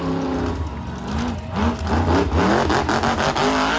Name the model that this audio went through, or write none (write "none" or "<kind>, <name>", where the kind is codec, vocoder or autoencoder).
none